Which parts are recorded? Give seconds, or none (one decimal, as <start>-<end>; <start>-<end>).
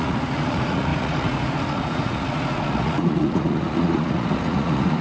none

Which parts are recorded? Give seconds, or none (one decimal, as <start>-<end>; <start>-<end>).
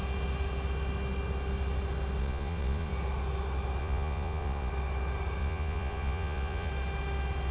0.0-2.2; 2.9-3.8; 4.7-5.4; 6.7-7.5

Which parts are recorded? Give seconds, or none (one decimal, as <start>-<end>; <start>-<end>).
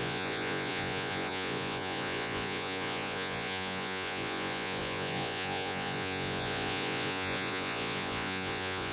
none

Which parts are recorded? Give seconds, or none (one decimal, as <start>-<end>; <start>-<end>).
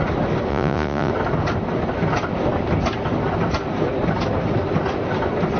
0.0-0.5; 1.1-5.6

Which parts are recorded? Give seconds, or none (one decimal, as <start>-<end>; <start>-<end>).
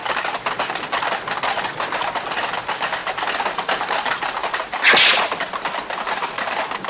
0.0-6.9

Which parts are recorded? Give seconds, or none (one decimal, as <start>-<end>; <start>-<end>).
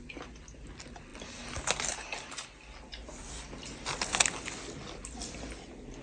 0.0-6.0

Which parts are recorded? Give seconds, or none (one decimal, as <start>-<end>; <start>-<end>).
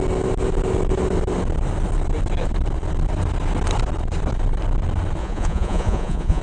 0.0-5.2